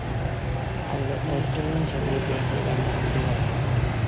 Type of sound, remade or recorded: recorded